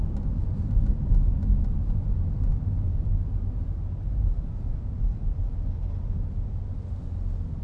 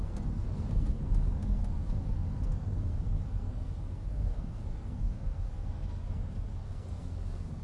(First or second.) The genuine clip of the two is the first